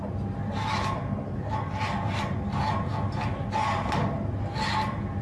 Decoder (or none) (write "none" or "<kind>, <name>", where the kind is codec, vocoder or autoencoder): none